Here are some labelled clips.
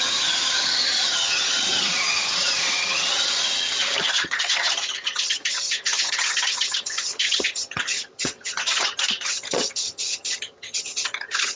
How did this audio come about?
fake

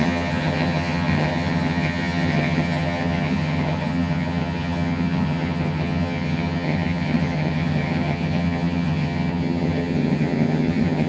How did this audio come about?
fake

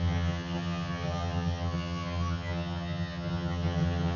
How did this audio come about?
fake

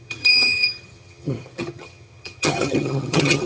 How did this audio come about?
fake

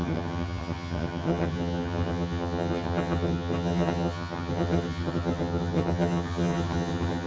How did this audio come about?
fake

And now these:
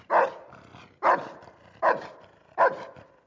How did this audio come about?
real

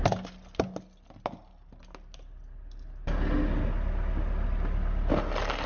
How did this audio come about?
real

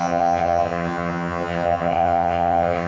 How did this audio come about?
fake